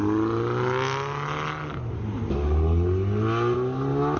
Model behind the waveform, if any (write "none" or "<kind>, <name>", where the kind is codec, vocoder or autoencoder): none